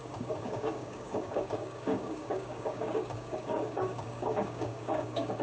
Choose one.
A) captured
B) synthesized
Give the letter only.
B